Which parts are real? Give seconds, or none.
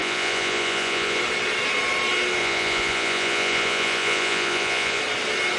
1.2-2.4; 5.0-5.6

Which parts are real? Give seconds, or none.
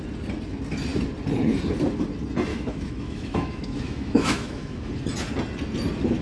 0.0-2.5; 4.9-6.2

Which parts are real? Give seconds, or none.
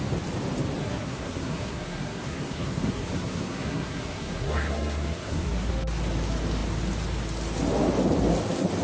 0.0-0.8; 5.7-8.8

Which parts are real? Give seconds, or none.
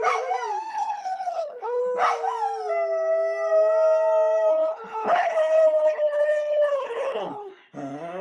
0.0-0.7; 1.8-4.5; 7.5-8.2